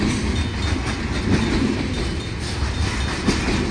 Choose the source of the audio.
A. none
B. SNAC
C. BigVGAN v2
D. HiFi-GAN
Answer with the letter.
A